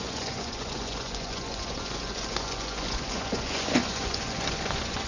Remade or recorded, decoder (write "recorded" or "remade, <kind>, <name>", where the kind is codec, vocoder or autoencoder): remade, vocoder, Vocos